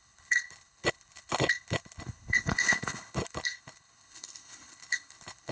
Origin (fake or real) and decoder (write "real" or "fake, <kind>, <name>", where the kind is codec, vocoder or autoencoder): fake, codec, HILCodec